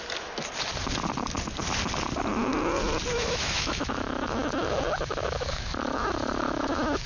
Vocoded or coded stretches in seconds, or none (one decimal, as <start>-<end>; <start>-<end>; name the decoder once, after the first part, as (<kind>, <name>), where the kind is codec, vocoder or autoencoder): 3.1-7.1 (autoencoder, DAC-VAE)